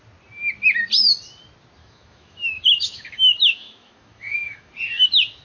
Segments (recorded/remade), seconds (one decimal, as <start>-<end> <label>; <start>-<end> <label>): 0.0-1.8 recorded; 1.8-4.7 remade; 4.7-5.4 recorded